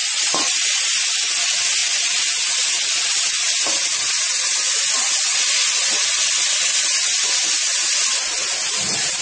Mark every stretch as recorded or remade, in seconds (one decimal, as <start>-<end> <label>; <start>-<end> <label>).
0.0-0.8 remade; 0.8-9.2 recorded